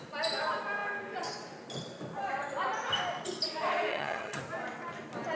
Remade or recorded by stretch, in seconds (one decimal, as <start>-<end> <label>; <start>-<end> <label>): 0.0-3.9 recorded; 3.9-4.4 remade; 4.4-5.4 recorded